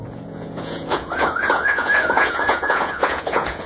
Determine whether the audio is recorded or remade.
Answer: remade